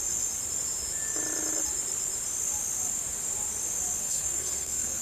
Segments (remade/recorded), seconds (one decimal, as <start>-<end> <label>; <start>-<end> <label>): 0.0-4.0 recorded; 4.0-5.0 remade

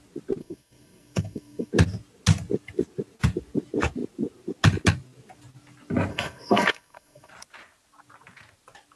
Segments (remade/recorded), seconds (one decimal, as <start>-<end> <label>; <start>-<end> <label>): 0.0-0.4 recorded; 0.4-1.7 remade; 1.7-6.1 recorded; 6.1-7.3 remade; 7.3-9.0 recorded

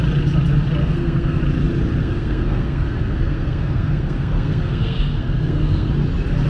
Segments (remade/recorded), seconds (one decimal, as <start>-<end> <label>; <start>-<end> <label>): 0.0-0.8 recorded; 0.8-1.4 remade; 1.4-2.0 recorded; 2.0-5.9 remade; 5.9-6.5 recorded

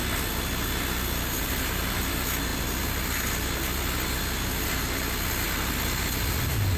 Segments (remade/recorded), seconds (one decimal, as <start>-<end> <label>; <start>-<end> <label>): 0.0-6.8 recorded

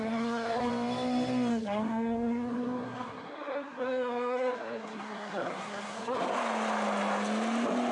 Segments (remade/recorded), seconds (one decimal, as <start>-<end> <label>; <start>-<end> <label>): 0.0-0.7 remade; 0.7-1.5 recorded; 1.5-6.2 remade; 6.2-7.9 recorded

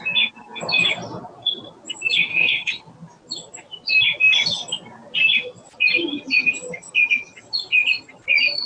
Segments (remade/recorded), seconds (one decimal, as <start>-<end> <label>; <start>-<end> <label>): 0.0-2.3 recorded; 2.3-2.8 remade; 2.8-8.7 recorded

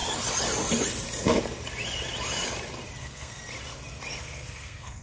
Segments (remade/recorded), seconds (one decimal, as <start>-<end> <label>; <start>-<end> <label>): 0.0-3.0 recorded; 3.0-3.4 remade; 3.4-4.2 recorded; 4.2-5.0 remade

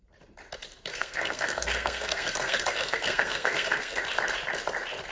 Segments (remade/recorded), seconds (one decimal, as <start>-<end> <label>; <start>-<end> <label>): 0.0-0.9 recorded; 0.9-4.0 remade; 4.0-5.1 recorded